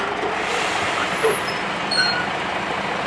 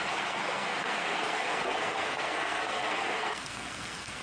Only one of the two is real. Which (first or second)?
first